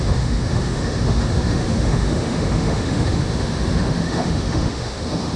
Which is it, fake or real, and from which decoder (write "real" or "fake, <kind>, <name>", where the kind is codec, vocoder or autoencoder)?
fake, autoencoder, DAC-VAE